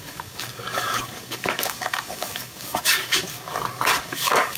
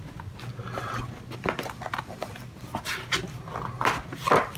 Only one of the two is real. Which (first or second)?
second